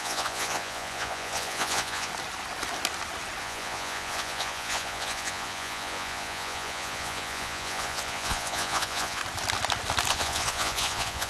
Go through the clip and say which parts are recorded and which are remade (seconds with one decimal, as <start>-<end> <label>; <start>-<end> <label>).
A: 0.0-2.1 remade; 2.1-3.4 recorded; 3.4-9.2 remade; 9.2-10.1 recorded; 10.1-11.3 remade